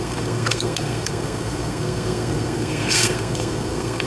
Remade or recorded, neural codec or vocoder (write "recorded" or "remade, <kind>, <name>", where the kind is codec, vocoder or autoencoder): remade, codec, SNAC